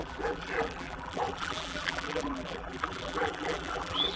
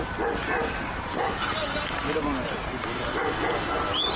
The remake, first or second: first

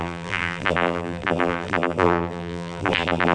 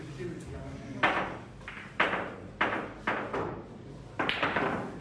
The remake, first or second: first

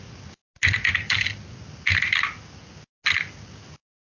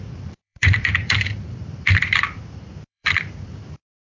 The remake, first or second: second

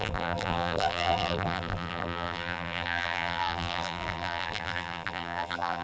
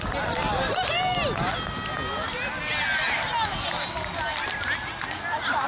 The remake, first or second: first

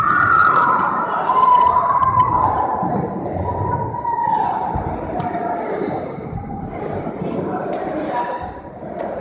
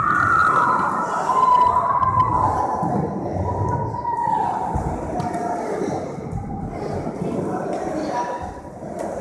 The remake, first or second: first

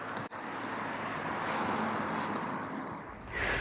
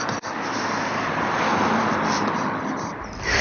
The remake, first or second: second